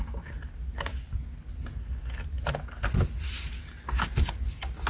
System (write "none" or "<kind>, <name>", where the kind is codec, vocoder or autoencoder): none